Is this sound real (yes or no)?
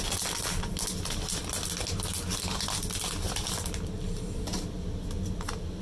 yes